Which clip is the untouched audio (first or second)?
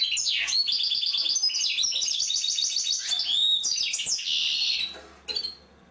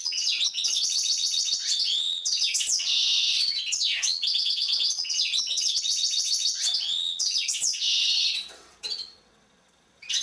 first